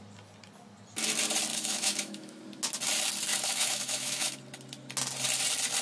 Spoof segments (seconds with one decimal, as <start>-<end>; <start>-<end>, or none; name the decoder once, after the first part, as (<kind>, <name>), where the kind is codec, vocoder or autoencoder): 1.5-2.4 (autoencoder, DAC-VAE); 3.3-4.4

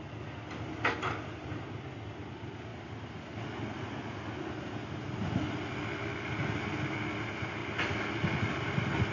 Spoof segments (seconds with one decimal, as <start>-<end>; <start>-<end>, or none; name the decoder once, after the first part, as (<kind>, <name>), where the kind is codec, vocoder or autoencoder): none